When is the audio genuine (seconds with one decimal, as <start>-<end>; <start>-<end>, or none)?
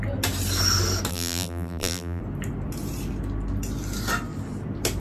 0.0-1.1; 2.2-5.0